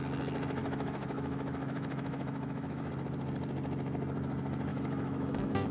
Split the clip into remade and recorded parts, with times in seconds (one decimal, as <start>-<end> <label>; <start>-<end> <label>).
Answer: 0.0-0.6 recorded; 0.6-2.9 remade; 2.9-4.7 recorded; 4.7-5.7 remade